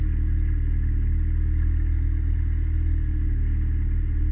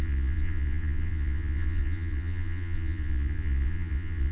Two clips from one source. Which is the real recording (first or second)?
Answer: first